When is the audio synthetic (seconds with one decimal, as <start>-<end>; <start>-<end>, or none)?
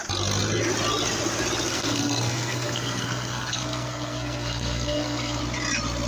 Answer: 1.7-5.4